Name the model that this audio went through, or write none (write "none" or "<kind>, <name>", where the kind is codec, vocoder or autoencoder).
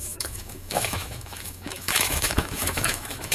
autoencoder, DAC-VAE